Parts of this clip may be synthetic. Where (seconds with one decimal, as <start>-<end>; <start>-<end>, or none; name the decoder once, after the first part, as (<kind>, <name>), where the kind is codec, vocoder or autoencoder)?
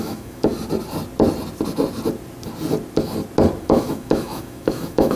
0.0-0.5 (autoencoder, DAC-VAE); 3.6-5.2